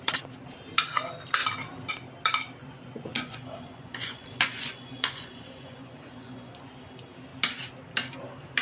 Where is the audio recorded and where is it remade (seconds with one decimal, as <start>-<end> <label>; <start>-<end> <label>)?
0.0-2.6 recorded; 2.6-6.7 remade; 6.7-8.6 recorded